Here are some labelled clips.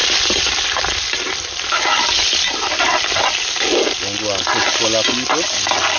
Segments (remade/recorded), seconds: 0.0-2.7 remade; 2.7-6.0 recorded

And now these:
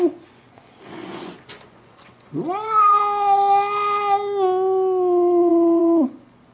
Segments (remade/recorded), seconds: 0.0-3.0 remade; 3.0-5.5 recorded; 5.5-6.5 remade

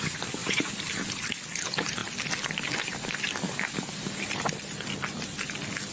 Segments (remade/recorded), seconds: 0.0-0.4 recorded; 0.4-0.9 remade; 0.9-5.9 recorded